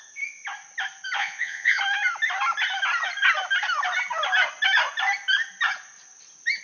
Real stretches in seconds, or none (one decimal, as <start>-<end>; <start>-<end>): 0.0-1.2; 1.8-6.6